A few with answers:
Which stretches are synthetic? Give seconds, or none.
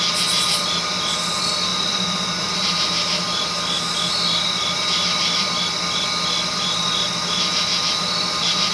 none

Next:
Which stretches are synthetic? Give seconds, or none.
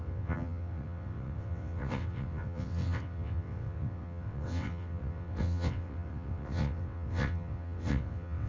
0.0-8.5 (vocoder, WaveNeXt)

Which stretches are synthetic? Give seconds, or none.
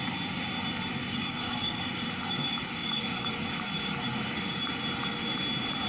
1.1-4.6 (codec, DAC)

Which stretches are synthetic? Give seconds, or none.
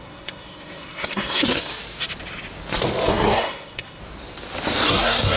0.0-1.7 (codec, SNAC); 3.1-4.0; 4.9-5.4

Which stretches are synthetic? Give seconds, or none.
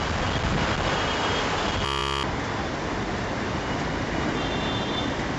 none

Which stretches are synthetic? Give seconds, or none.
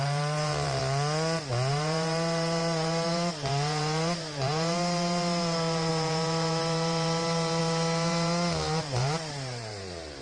0.0-0.8 (vocoder, BigVGAN v2); 1.7-10.2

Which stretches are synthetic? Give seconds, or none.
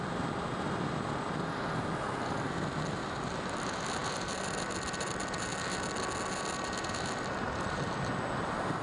0.0-5.5 (vocoder, BigVGAN v2); 6.3-8.8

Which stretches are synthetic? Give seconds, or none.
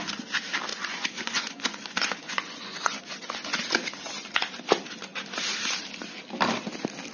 0.7-3.0 (vocoder, Vocos)